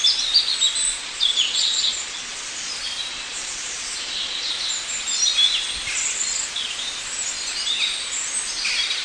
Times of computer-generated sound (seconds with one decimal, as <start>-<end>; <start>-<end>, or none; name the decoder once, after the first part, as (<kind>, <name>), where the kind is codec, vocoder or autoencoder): 0.9-2.7 (vocoder, Vocos); 3.1-4.5